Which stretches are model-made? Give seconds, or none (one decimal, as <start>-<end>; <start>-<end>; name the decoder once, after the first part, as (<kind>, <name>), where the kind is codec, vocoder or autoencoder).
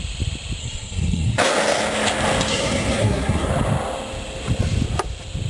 0.6-1.5 (codec, SNAC); 2.5-3.5